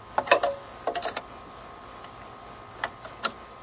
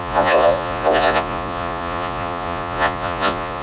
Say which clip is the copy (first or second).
second